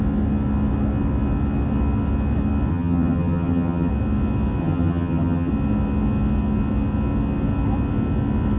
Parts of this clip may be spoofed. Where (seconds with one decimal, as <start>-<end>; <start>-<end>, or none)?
2.7-3.9; 4.6-5.5